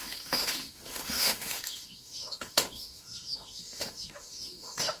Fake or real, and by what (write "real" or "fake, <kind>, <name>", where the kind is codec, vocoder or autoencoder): fake, autoencoder, DAC-VAE